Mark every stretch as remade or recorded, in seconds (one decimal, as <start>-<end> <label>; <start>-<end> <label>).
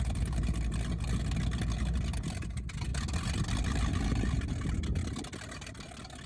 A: 0.0-6.3 recorded